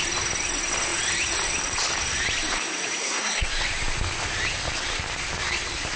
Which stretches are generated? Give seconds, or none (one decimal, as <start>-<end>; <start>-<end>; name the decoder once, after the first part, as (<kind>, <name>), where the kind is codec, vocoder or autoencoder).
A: 3.0-3.5 (codec, SNAC)